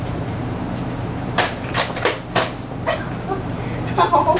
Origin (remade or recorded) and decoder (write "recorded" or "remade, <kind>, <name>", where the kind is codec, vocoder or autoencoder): remade, vocoder, BigVGAN v2